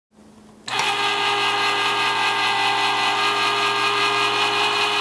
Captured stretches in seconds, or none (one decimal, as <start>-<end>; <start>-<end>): 0.0-5.0